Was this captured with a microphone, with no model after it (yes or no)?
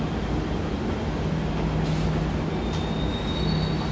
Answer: yes